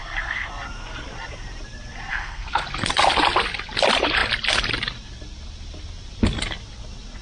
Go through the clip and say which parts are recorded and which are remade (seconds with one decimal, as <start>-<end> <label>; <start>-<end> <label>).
0.0-0.5 remade; 0.5-2.1 recorded; 2.1-2.6 remade; 2.6-7.2 recorded